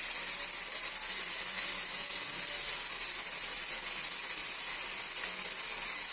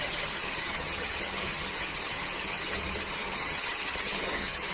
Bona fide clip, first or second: first